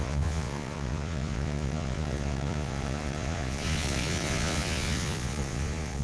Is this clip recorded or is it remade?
remade